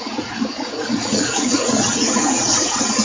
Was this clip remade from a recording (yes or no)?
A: yes